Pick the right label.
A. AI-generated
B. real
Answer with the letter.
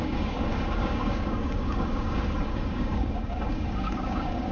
A